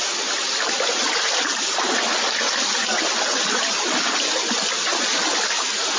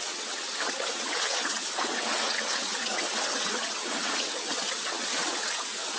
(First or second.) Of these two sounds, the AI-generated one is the second